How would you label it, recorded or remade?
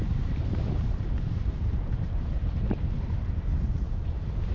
remade